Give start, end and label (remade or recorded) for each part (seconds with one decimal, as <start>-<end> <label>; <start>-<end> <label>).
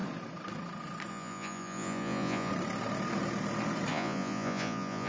0.0-1.1 recorded; 1.1-2.5 remade; 2.5-3.9 recorded; 3.9-5.1 remade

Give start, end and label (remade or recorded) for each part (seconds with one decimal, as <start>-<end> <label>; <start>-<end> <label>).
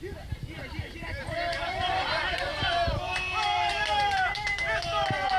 0.0-5.4 remade